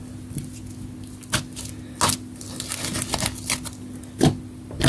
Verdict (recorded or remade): recorded